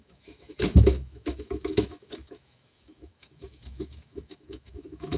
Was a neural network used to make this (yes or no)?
yes